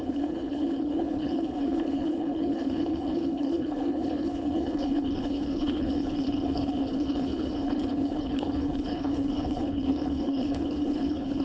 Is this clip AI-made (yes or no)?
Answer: yes